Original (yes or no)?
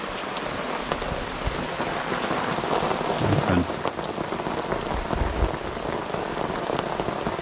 yes